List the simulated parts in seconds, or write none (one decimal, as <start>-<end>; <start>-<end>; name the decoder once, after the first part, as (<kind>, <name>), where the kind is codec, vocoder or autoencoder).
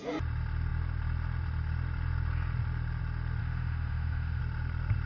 3.4-4.4 (autoencoder, DAC-VAE)